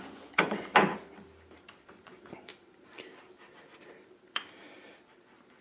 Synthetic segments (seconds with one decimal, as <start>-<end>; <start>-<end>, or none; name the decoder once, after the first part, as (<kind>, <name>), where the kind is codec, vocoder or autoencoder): 0.0-0.7 (vocoder, Vocos); 2.0-2.5